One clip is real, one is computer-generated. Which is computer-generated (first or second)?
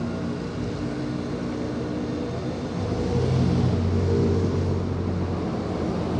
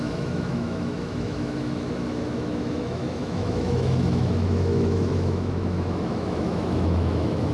second